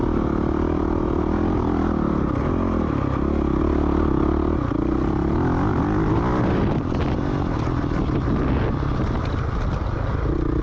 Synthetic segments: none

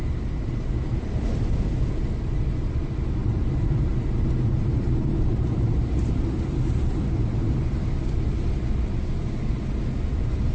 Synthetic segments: 3.2-7.2 (vocoder, BigVGAN v2)

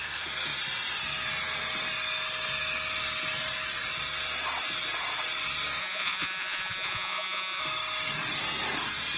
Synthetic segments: 5.8-7.6 (vocoder, Vocos)

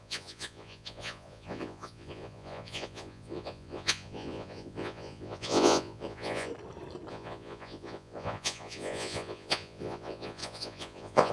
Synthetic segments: 0.0-6.5 (vocoder, Vocos); 7.1-11.3